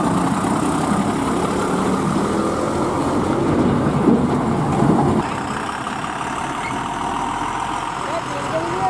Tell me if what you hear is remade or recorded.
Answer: recorded